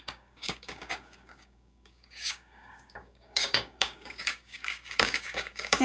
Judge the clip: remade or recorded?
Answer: remade